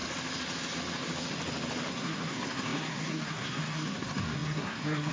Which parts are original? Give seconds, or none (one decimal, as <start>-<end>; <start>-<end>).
0.0-1.9